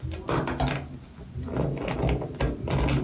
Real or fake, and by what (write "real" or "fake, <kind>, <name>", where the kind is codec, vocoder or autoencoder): real